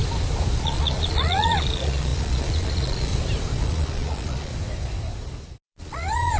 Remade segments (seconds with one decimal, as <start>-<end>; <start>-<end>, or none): 0.6-3.1; 3.6-4.5; 5.8-6.4